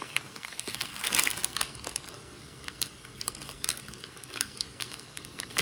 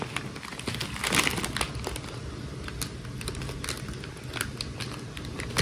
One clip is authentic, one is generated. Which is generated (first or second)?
first